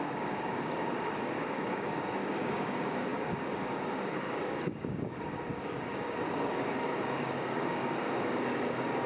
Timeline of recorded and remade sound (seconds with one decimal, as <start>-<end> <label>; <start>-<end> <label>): 0.0-9.1 remade